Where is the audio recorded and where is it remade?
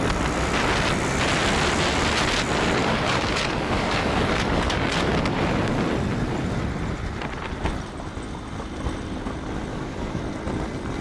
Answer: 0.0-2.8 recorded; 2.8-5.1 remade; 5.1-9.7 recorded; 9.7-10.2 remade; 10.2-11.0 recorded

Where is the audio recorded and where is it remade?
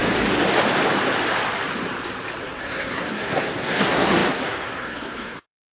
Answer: 0.0-2.4 recorded; 2.4-5.7 remade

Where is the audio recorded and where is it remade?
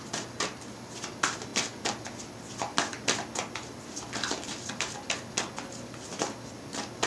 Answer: 0.0-7.1 recorded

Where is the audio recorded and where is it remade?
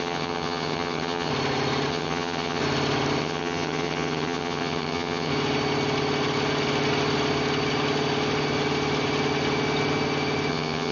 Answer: 0.0-1.3 remade; 1.3-1.9 recorded; 1.9-2.6 remade; 2.6-3.2 recorded; 3.2-5.3 remade; 5.3-10.5 recorded; 10.5-10.9 remade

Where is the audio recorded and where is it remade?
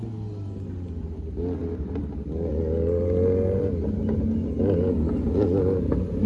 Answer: 0.0-6.3 recorded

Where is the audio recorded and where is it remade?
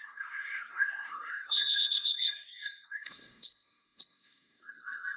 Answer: 0.0-5.2 remade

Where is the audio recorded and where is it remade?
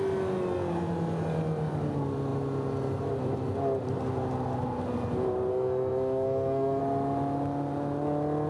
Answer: 0.0-5.5 recorded; 5.5-6.8 remade; 6.8-8.5 recorded